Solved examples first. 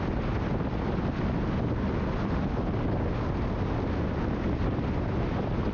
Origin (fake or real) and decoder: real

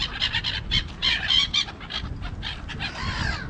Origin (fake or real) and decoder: real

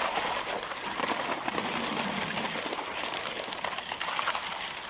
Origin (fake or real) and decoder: real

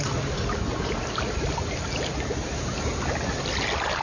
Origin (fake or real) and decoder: real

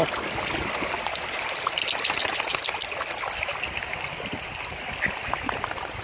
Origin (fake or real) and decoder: real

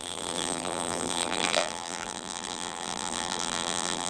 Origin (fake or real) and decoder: fake, vocoder, BigVGAN v2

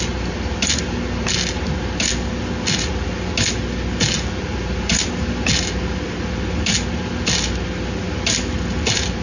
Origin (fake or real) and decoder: real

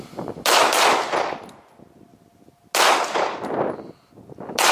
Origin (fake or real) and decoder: real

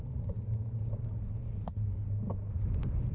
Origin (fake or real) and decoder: real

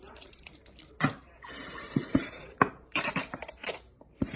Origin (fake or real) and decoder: fake, vocoder, BigVGAN v2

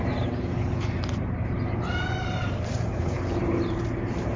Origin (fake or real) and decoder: fake, vocoder, BigVGAN v2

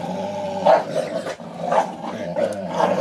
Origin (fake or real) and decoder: fake, vocoder, BigVGAN v2